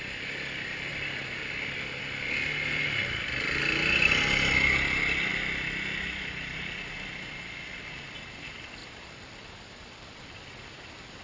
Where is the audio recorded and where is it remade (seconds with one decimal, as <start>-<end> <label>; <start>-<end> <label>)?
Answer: 0.0-0.9 recorded; 0.9-2.0 remade; 2.0-8.8 recorded; 8.8-10.5 remade; 10.5-11.2 recorded